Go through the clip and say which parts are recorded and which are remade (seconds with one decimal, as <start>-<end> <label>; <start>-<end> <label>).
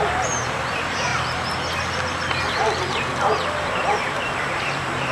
0.0-1.1 remade; 1.1-3.6 recorded; 3.6-5.1 remade